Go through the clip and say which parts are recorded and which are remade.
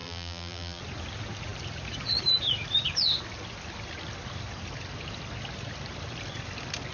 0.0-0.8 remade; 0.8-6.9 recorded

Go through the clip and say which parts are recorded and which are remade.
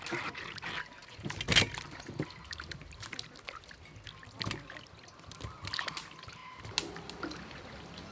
0.0-8.1 recorded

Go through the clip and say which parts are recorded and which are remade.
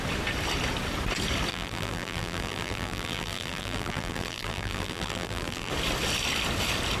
0.0-1.5 recorded; 1.5-5.7 remade; 5.7-7.0 recorded